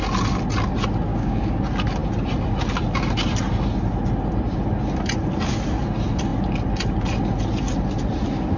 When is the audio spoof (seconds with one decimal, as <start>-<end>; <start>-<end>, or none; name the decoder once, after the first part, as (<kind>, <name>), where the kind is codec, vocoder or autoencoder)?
1.1-1.6 (codec, DAC)